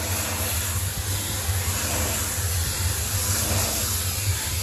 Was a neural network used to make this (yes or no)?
no